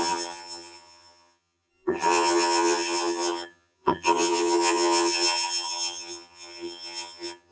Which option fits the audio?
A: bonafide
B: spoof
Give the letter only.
B